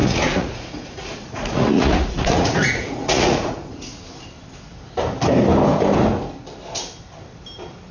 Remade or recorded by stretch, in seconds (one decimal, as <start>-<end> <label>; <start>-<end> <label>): 0.0-3.9 remade; 3.9-7.9 recorded